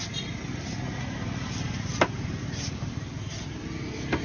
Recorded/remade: recorded